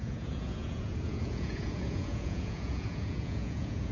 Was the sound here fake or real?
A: fake